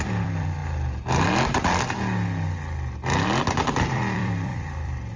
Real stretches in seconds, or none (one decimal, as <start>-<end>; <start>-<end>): 0.6-3.7